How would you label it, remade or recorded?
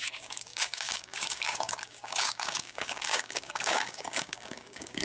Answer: remade